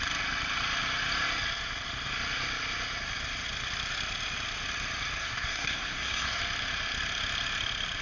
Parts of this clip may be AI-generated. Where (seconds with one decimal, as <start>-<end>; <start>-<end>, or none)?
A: 5.2-6.4